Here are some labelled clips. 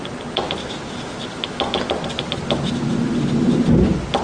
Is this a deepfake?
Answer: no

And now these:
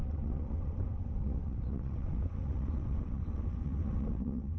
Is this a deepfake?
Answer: yes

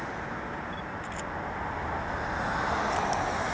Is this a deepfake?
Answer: no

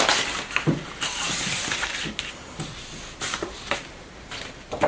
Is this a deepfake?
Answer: yes